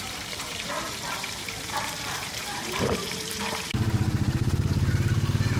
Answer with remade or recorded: remade